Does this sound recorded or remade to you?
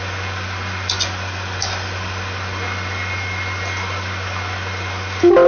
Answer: recorded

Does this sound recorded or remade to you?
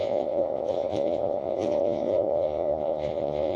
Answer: remade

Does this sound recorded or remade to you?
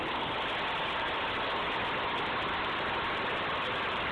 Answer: recorded